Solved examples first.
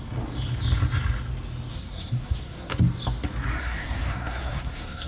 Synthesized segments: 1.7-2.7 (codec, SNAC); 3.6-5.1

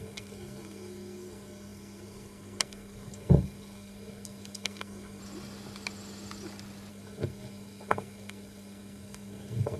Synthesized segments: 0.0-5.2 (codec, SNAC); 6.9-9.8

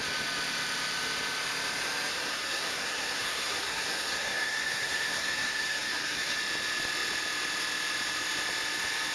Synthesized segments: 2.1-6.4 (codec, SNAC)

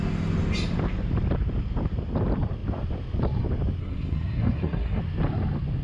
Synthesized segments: 3.8-5.0 (codec, SNAC)